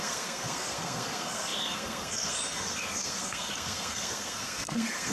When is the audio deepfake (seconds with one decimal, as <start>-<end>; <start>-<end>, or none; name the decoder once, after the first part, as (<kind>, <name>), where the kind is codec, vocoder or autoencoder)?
0.0-5.1 (codec, SNAC)